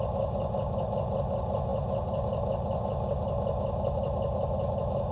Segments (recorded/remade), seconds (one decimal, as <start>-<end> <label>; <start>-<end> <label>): 0.0-5.1 recorded